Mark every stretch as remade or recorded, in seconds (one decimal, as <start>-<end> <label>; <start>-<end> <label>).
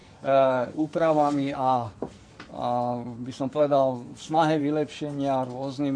0.0-2.3 remade; 2.3-3.5 recorded; 3.5-4.6 remade; 4.6-6.0 recorded